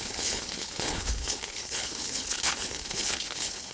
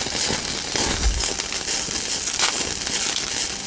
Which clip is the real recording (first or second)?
second